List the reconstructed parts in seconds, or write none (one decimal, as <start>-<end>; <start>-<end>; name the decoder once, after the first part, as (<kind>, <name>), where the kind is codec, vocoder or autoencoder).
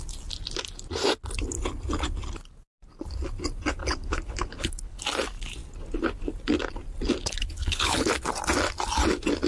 3.8-5.0 (codec, HILCodec); 7.2-8.3